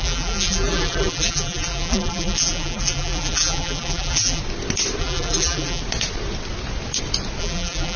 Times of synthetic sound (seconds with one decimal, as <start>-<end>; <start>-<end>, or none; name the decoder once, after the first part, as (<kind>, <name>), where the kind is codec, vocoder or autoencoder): 0.0-4.4 (vocoder, BigVGAN v2); 5.0-5.8; 7.4-8.0

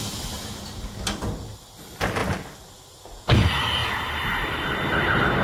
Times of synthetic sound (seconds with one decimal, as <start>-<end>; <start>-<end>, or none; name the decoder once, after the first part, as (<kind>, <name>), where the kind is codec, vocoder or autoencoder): none